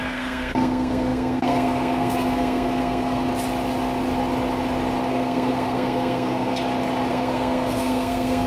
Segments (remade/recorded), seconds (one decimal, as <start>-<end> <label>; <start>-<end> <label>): 0.0-3.3 remade; 3.3-5.1 recorded; 5.1-6.5 remade; 6.5-7.1 recorded; 7.1-8.5 remade